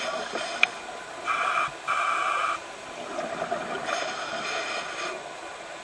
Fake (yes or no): no